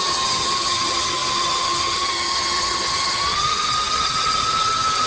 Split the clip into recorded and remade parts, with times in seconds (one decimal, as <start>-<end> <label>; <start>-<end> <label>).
0.0-5.1 remade